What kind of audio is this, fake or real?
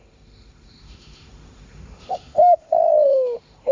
fake